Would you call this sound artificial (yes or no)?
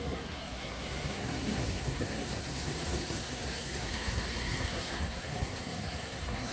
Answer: yes